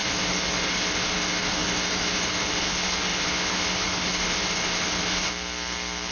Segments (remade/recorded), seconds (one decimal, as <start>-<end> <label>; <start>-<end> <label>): 0.0-5.3 remade; 5.3-6.1 recorded

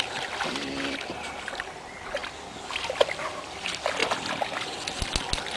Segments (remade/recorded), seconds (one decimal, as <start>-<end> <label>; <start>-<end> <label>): 0.0-5.6 recorded